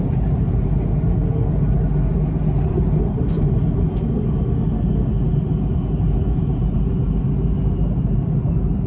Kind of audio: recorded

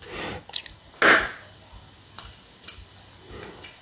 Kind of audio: recorded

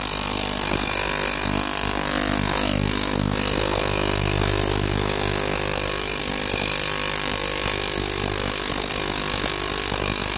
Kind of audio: recorded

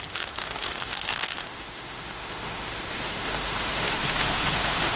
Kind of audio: remade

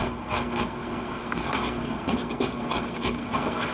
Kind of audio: remade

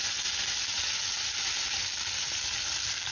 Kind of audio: recorded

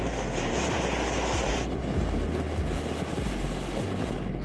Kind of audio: recorded